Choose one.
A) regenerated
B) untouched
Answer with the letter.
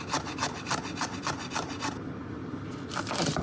B